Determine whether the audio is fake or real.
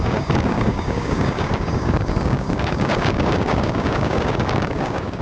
fake